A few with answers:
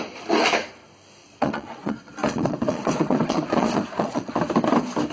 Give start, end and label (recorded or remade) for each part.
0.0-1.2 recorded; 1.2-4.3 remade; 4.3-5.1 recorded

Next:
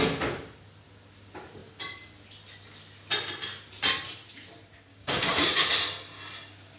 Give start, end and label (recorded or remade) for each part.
0.0-4.9 recorded; 4.9-5.7 remade; 5.7-6.8 recorded

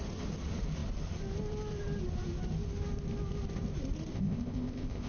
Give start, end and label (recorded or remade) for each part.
0.0-4.1 recorded; 4.1-5.1 remade

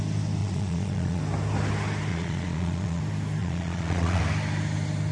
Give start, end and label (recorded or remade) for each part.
0.0-0.4 recorded; 0.4-1.2 remade; 1.2-2.1 recorded; 2.1-3.0 remade; 3.0-3.4 recorded; 3.4-4.2 remade; 4.2-5.1 recorded

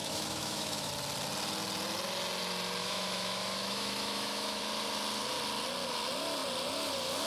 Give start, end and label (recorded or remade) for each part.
0.0-0.9 remade; 0.9-2.8 recorded; 2.8-4.6 remade; 4.6-7.3 recorded

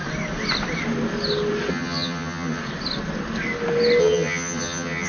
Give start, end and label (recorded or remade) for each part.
0.0-1.7 recorded; 1.7-2.6 remade; 2.6-4.0 recorded; 4.0-5.1 remade

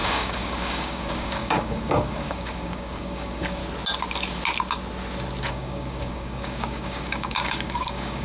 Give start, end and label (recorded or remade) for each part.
0.0-3.6 remade; 3.6-5.4 recorded; 5.4-8.2 remade

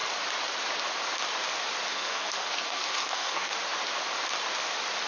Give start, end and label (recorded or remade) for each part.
0.0-1.9 recorded; 1.9-3.5 remade; 3.5-5.1 recorded